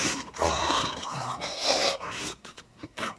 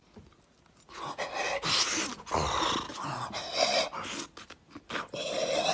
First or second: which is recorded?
second